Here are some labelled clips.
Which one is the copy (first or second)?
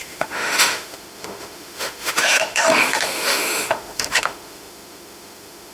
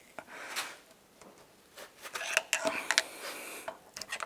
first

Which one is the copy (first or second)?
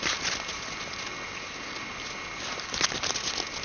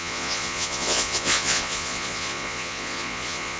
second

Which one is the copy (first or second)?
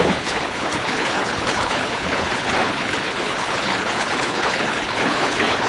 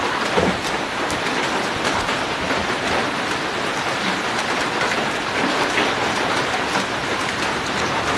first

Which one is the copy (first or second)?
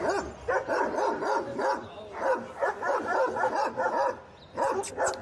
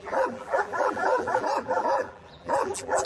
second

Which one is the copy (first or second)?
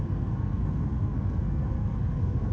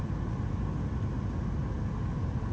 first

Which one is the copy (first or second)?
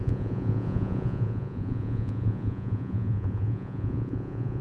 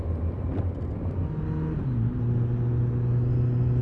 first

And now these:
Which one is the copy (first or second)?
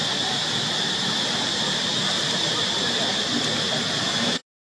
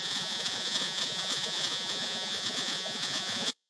second